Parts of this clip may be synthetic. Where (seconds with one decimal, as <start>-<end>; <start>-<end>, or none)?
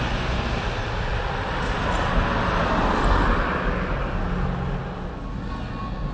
none